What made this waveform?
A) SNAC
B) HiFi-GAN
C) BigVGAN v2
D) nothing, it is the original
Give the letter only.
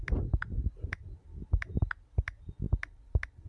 D